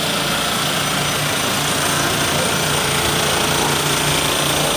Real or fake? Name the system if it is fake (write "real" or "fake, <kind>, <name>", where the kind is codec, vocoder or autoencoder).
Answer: real